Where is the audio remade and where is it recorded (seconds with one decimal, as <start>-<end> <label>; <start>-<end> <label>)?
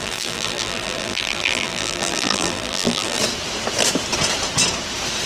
0.0-3.2 remade; 3.2-5.3 recorded